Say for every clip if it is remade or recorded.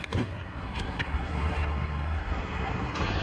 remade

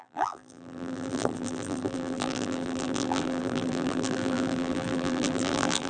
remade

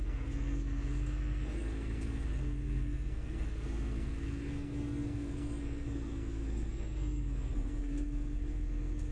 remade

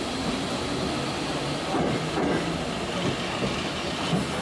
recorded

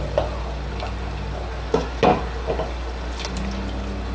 recorded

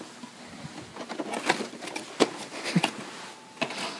recorded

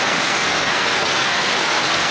remade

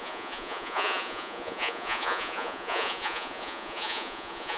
remade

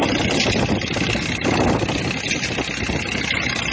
recorded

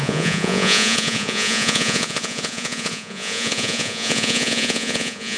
remade